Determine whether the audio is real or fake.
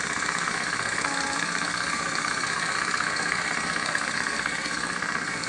fake